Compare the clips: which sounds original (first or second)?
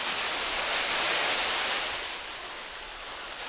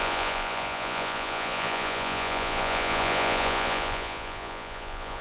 first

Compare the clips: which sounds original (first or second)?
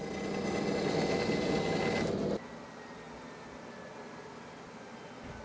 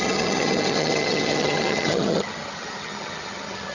first